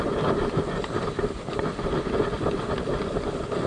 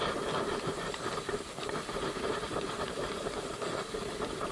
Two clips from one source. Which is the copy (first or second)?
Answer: second